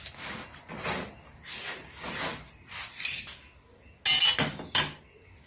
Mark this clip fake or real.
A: real